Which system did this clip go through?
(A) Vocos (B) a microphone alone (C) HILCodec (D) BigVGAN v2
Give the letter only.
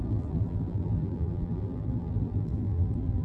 D